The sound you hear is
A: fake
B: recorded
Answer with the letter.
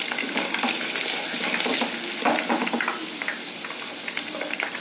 B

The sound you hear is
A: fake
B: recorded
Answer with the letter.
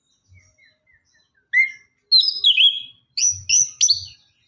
B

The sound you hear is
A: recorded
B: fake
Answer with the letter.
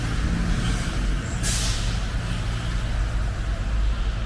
A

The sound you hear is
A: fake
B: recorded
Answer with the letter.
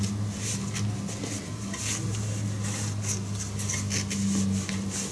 B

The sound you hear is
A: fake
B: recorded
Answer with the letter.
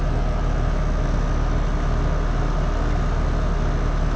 B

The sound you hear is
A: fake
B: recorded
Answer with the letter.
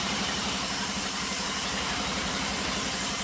A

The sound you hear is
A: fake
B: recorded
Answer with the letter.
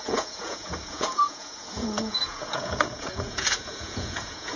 A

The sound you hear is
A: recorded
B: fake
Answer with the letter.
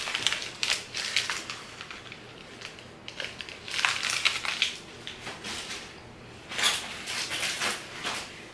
A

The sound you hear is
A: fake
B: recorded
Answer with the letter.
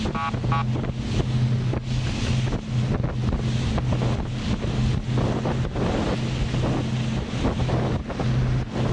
B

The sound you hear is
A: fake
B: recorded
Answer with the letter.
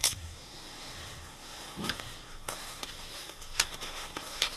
A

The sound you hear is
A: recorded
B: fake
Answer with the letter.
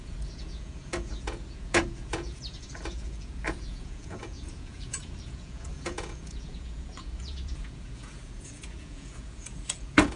B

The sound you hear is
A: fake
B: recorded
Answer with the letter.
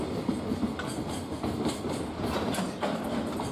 B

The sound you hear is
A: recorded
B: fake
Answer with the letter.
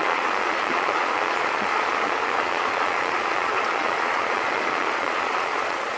B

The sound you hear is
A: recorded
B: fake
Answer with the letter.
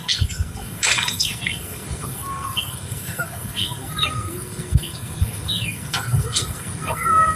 B